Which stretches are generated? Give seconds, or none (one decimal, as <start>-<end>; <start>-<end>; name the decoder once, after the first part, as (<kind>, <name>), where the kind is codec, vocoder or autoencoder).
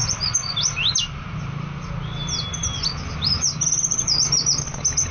none